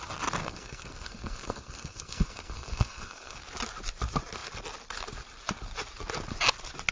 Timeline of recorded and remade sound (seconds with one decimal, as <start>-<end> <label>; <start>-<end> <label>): 0.0-0.4 recorded; 0.4-3.4 remade; 3.4-6.9 recorded